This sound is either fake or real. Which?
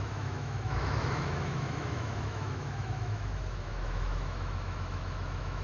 fake